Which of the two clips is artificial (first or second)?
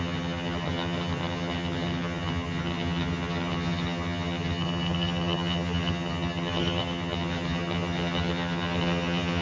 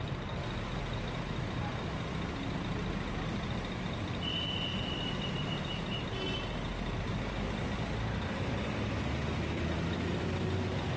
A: first